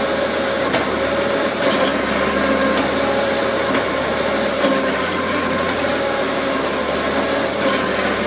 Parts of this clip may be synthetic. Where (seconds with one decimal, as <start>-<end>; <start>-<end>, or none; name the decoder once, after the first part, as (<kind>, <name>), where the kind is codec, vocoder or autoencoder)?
5.0-5.9 (vocoder, Vocos)